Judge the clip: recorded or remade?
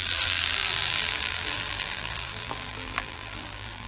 remade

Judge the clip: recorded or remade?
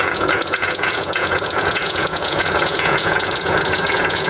remade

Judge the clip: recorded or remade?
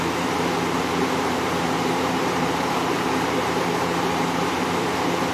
remade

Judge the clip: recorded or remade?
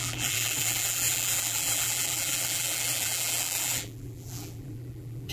remade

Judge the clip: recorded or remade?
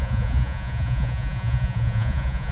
remade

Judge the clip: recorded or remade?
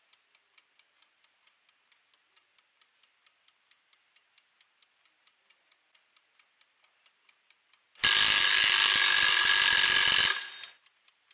recorded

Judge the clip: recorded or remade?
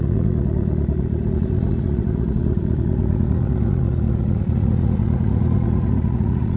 remade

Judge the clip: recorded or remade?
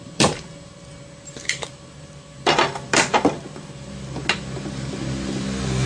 recorded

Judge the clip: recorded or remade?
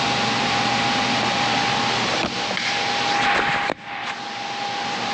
recorded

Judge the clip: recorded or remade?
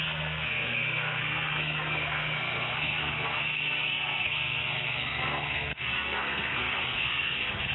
remade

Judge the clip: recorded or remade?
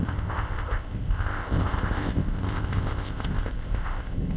remade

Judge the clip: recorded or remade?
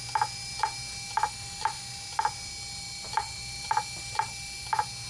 recorded